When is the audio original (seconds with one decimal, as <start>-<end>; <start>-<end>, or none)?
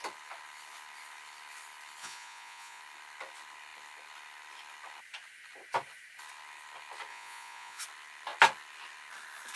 0.0-2.0; 2.8-7.1; 7.8-9.6